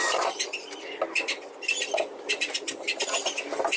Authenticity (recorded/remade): recorded